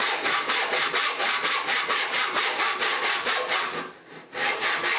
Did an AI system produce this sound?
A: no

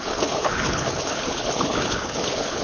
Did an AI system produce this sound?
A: yes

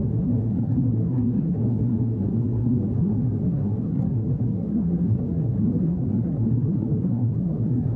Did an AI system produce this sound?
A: yes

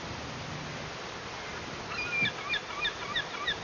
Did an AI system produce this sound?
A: no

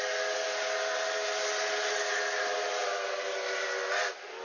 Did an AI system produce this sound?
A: no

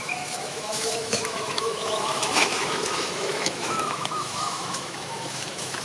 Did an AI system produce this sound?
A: yes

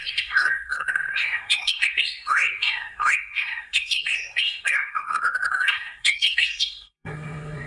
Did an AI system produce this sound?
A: yes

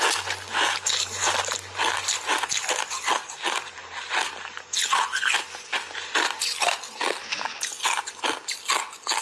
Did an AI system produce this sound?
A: no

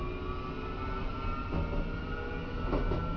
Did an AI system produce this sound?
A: no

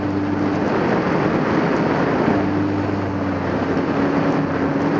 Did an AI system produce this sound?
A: no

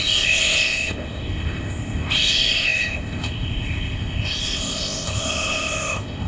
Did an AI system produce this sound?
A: yes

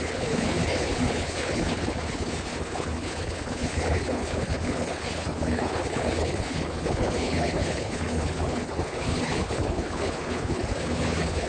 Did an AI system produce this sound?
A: yes